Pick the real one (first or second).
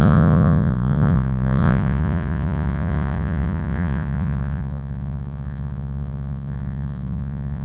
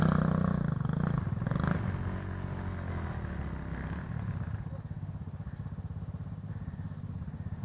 second